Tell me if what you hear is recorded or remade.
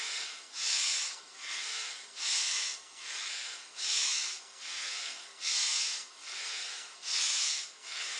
remade